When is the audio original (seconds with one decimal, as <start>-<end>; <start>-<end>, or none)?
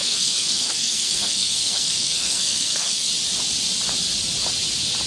3.1-5.1